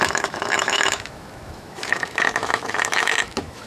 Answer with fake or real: fake